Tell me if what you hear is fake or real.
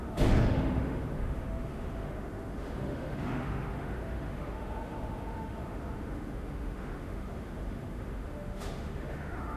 fake